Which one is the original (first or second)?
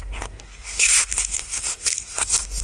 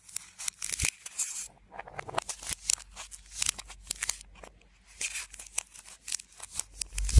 second